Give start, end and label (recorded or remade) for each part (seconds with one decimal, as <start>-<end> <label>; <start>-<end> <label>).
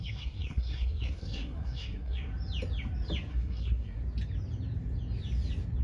0.0-2.3 remade; 2.3-3.3 recorded; 3.3-4.0 remade; 4.0-5.8 recorded